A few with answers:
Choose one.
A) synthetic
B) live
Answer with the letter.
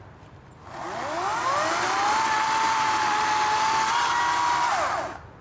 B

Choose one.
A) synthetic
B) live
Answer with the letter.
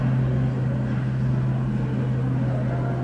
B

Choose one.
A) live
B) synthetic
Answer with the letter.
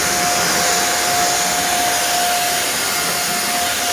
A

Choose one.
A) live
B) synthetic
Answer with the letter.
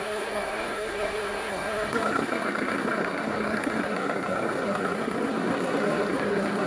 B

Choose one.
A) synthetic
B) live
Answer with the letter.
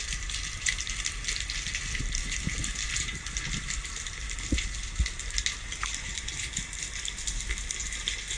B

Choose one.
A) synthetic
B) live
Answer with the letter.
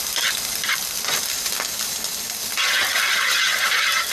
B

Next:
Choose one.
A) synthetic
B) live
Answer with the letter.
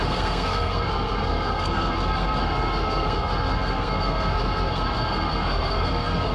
A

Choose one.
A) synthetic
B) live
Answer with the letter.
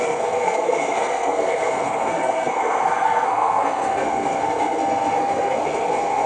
A